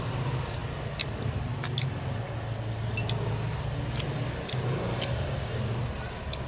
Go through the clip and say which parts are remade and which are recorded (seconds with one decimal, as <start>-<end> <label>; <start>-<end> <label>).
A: 0.0-6.5 recorded